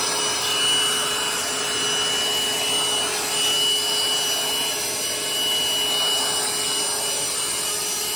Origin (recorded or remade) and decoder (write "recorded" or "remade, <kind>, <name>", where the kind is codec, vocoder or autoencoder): recorded